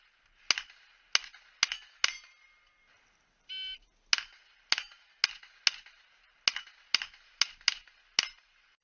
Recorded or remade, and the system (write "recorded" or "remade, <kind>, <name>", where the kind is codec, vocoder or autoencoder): recorded